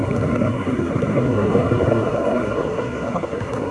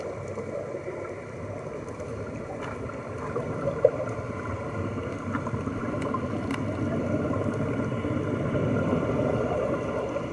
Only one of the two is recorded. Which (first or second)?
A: second